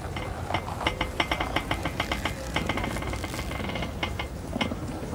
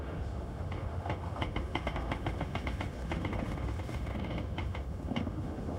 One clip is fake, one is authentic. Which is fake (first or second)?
second